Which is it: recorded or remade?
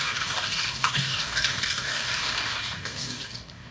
remade